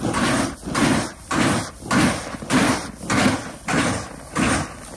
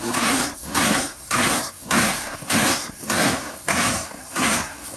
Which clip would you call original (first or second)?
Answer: first